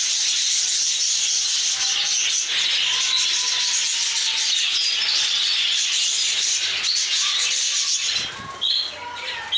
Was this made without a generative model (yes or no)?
yes